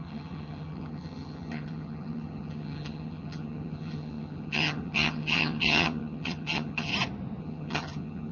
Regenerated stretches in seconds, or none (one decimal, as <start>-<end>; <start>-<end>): 0.0-6.9; 7.4-8.3